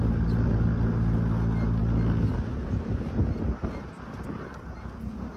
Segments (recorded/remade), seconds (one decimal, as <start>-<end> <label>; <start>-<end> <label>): 0.0-5.4 recorded